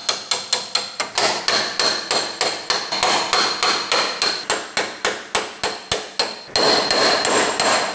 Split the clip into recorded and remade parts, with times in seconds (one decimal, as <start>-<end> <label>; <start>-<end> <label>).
0.0-7.9 recorded